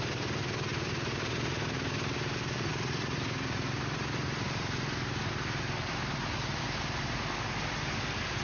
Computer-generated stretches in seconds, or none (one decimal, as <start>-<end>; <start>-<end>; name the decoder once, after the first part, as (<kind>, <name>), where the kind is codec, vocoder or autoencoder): 0.7-1.5 (vocoder, BigVGAN v2); 2.7-3.2